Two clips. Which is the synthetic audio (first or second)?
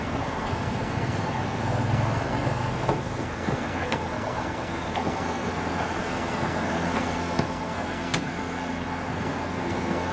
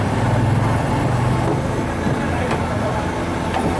first